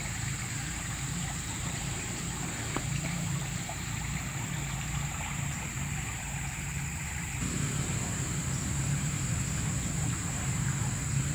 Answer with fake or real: fake